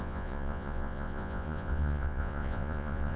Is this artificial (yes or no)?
yes